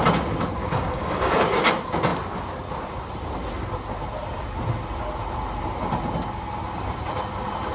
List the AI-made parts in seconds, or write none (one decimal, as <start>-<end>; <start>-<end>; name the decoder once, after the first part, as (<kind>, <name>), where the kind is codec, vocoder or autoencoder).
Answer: 0.6-1.3 (codec, DAC)